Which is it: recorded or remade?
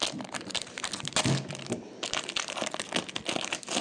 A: recorded